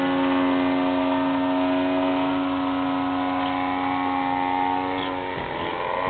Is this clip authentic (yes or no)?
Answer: yes